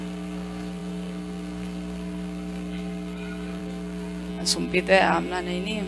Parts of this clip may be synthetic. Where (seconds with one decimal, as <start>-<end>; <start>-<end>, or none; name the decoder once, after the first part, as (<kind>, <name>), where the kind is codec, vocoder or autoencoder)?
0.0-4.3 (codec, SNAC)